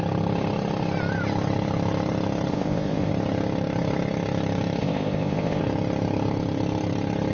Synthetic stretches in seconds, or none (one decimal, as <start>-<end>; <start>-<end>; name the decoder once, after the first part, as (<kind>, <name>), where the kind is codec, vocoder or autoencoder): 2.5-3.1 (codec, ZipCodec); 4.8-5.6